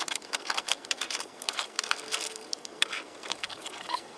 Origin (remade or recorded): remade